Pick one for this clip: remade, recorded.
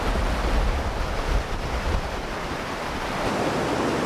recorded